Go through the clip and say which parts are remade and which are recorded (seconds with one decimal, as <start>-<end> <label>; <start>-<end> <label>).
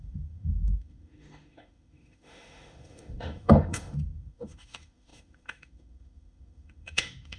0.0-7.4 remade